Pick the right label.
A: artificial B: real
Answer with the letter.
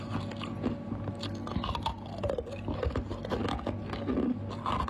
B